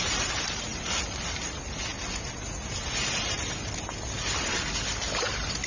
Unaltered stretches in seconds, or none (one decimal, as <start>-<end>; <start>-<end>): 1.9-5.3